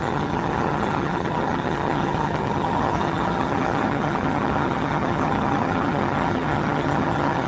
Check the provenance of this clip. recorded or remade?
remade